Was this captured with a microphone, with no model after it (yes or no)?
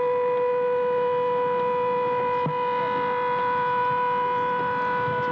yes